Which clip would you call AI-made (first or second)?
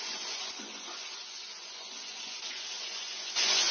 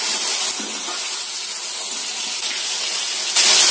first